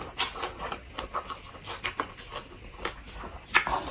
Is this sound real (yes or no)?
yes